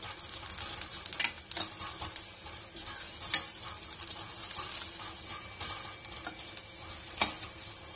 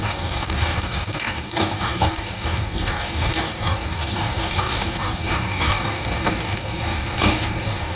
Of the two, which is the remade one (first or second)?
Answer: second